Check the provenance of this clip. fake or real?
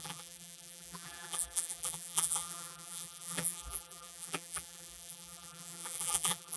fake